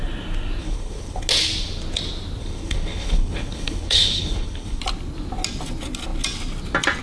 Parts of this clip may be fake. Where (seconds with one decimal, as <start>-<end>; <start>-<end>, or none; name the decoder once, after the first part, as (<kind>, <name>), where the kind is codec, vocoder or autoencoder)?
0.6-1.2 (codec, HILCodec); 2.4-4.8